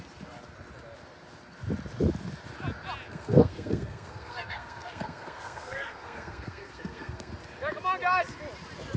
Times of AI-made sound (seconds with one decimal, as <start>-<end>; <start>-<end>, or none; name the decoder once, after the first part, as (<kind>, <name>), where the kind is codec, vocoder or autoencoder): 3.1-7.3 (codec, SNAC)